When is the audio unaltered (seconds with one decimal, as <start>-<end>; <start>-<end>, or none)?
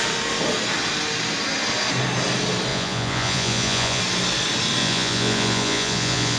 0.0-2.7; 4.0-4.8